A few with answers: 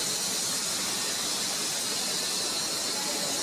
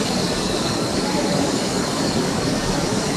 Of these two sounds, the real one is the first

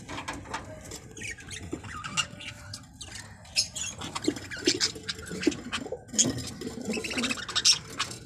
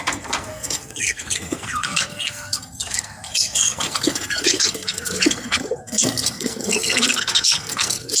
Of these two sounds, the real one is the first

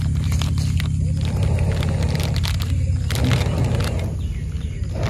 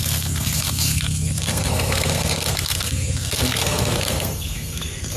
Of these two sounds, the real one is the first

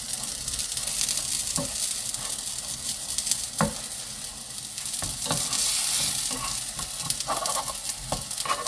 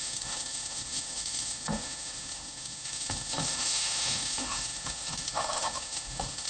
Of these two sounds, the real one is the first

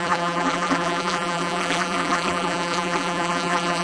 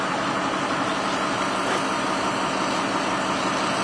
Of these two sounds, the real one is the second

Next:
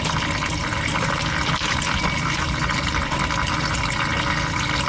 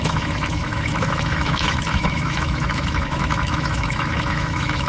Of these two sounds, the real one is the first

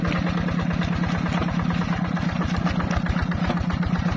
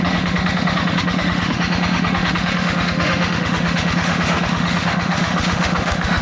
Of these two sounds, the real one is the first